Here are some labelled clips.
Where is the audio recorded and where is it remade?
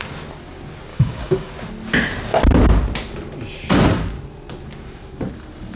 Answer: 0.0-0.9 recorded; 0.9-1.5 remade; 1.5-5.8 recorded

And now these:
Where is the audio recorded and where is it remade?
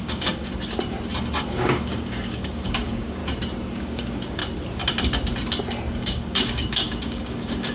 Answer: 0.0-0.5 remade; 0.5-1.5 recorded; 1.5-3.2 remade; 3.2-3.8 recorded; 3.8-4.4 remade; 4.4-6.0 recorded; 6.0-7.7 remade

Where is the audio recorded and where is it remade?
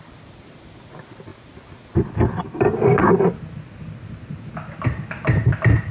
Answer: 0.0-5.9 recorded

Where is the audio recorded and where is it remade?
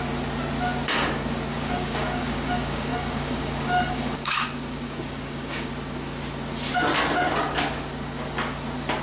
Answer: 0.0-1.5 recorded; 1.5-5.7 remade; 5.7-9.0 recorded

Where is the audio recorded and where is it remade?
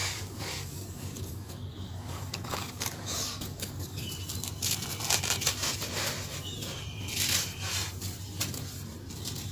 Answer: 0.0-4.1 remade; 4.1-9.5 recorded